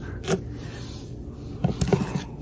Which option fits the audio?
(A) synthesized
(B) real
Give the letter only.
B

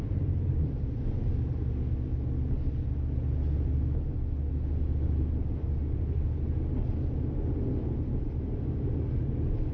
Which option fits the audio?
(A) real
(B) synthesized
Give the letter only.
A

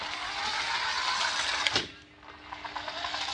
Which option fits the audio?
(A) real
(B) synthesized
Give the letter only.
A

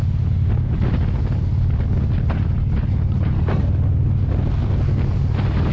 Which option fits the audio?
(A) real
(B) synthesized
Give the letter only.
A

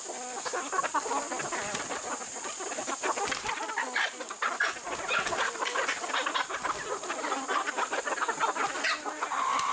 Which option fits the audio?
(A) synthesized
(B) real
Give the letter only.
B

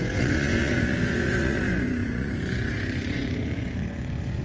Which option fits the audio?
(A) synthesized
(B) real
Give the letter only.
A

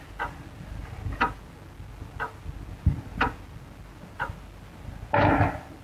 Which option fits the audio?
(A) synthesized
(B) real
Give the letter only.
B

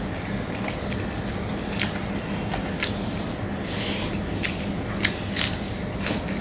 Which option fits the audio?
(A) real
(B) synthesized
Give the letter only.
A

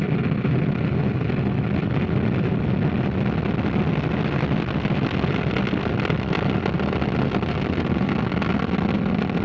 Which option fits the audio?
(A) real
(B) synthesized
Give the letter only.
A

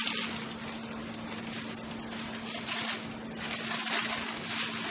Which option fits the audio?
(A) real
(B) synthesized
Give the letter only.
A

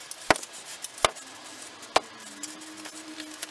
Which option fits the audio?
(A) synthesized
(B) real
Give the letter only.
B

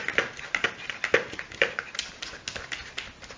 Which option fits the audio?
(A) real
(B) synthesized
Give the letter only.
A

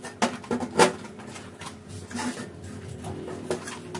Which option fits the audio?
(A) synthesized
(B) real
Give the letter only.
B